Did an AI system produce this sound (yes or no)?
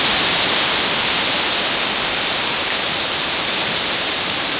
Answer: yes